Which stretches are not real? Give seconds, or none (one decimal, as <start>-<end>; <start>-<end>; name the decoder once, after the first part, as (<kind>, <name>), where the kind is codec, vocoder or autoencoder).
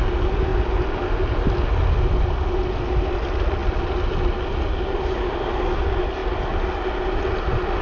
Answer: none